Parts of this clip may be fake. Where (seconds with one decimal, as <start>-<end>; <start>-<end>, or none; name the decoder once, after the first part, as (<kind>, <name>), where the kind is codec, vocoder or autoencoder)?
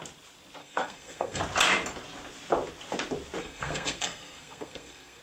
0.6-1.4 (codec, SNAC); 3.4-5.2